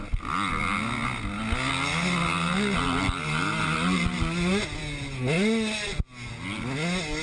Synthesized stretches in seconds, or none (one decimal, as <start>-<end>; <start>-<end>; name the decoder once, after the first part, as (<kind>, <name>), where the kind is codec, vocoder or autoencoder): none